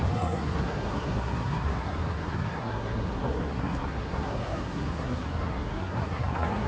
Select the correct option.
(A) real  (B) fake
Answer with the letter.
B